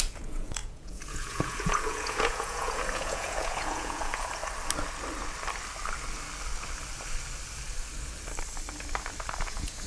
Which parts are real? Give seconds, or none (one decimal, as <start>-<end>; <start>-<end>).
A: 4.4-9.4